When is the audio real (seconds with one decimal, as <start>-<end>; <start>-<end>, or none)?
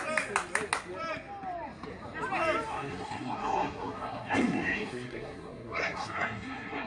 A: 0.0-2.7